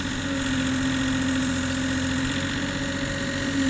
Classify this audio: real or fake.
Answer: real